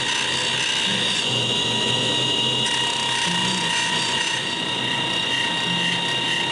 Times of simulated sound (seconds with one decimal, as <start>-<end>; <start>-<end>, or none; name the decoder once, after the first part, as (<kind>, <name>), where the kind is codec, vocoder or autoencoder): 0.9-2.1 (vocoder, Vocos); 3.4-5.3